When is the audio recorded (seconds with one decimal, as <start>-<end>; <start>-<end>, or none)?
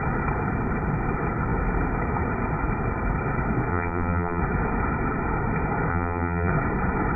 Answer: 0.0-3.7; 4.4-5.9; 6.5-7.2